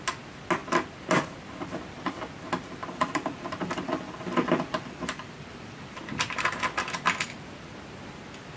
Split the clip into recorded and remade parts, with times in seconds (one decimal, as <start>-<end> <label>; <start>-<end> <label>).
0.0-2.8 recorded; 2.8-5.9 remade; 5.9-8.6 recorded